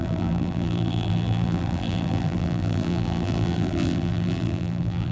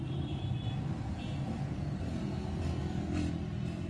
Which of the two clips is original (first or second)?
second